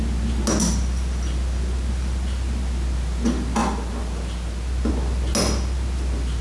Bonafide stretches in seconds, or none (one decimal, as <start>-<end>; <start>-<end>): 0.0-6.4